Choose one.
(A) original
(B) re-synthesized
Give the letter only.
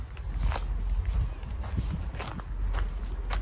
A